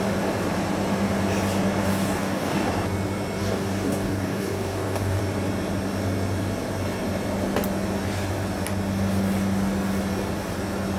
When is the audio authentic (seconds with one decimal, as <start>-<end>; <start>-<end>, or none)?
0.0-1.8; 2.7-3.4; 5.2-11.0